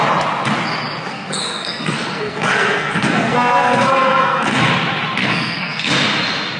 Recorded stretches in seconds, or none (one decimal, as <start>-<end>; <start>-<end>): 0.0-1.1; 4.7-5.2; 5.9-6.6

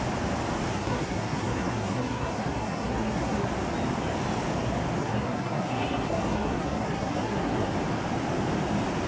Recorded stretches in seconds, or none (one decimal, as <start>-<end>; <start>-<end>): 0.0-0.7; 3.5-5.0; 7.7-9.1

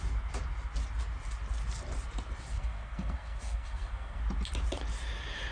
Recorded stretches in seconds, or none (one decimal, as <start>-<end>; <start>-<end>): 0.0-2.5; 4.2-5.5

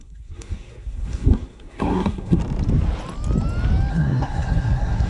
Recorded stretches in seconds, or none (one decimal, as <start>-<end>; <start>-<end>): 2.4-3.9

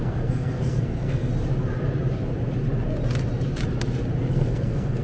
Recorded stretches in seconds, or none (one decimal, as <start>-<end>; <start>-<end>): 1.3-4.3

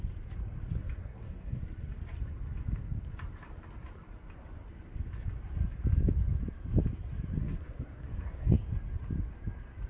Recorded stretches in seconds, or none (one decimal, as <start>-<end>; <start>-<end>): 0.0-1.0; 1.6-7.4; 8.5-9.9

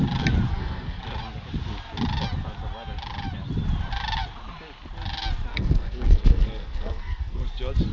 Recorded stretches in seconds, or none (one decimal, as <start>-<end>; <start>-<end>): 0.0-0.5; 1.0-5.5; 7.4-7.9